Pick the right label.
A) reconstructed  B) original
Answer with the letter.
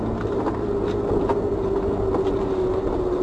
B